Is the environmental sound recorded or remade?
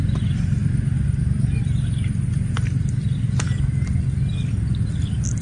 recorded